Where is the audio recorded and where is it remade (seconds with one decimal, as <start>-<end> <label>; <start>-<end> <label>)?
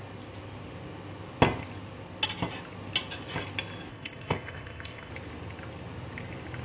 0.0-3.9 recorded; 3.9-5.1 remade; 5.1-6.6 recorded